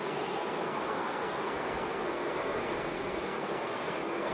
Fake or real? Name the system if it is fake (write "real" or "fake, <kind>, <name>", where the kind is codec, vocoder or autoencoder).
fake, codec, SNAC